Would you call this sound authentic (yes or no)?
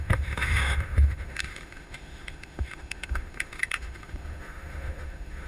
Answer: no